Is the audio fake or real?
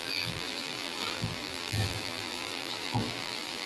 fake